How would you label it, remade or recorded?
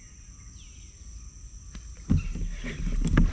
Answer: recorded